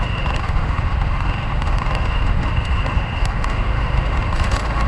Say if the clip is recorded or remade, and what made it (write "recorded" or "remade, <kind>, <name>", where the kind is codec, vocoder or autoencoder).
remade, autoencoder, DAC-VAE